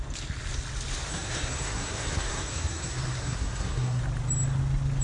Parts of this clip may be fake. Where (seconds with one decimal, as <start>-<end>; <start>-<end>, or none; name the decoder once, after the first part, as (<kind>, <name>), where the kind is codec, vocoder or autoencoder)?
1.1-4.0 (codec, SNAC)